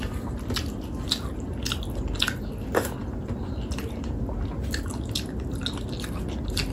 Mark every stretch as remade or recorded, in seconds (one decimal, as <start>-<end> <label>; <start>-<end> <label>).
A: 0.0-6.7 recorded